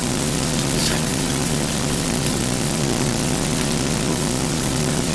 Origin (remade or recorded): remade